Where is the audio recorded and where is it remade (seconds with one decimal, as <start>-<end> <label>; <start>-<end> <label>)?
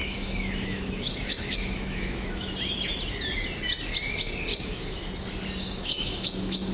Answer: 0.0-2.5 remade; 2.5-4.5 recorded; 4.5-5.0 remade; 5.0-5.8 recorded; 5.8-6.7 remade